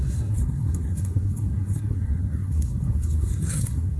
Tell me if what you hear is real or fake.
fake